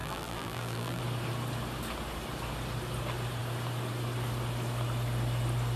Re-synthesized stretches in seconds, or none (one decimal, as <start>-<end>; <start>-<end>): 0.0-1.0